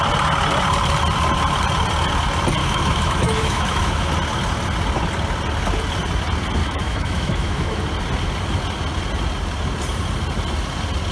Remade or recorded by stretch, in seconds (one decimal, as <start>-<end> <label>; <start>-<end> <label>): 0.0-2.6 recorded; 2.6-4.1 remade; 4.1-6.6 recorded; 6.6-7.8 remade; 7.8-11.1 recorded